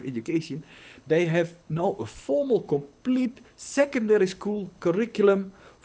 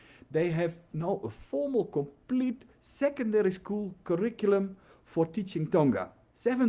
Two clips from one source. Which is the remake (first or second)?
first